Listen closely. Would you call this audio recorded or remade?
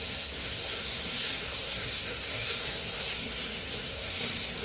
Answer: remade